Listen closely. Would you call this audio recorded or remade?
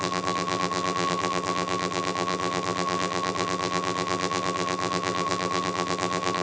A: remade